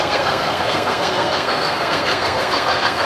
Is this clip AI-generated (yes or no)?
yes